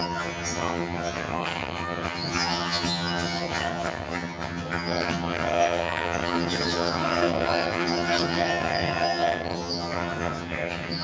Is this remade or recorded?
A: remade